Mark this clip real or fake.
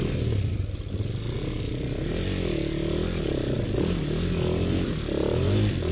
real